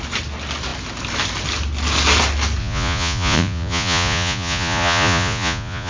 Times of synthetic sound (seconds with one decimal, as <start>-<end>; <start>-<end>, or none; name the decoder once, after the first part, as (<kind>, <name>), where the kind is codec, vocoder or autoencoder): 2.6-5.9 (vocoder, Vocos)